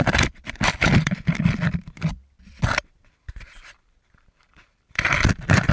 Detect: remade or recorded remade